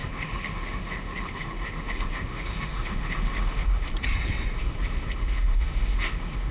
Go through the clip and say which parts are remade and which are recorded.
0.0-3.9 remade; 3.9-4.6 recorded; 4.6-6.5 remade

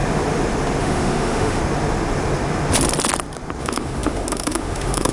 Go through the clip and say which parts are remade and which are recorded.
0.0-0.8 recorded; 0.8-1.6 remade; 1.6-3.6 recorded; 3.6-5.1 remade